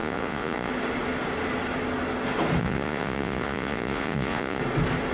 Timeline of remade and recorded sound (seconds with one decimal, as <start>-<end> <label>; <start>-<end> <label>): 0.0-0.7 remade; 0.7-2.6 recorded; 2.6-4.6 remade; 4.6-5.1 recorded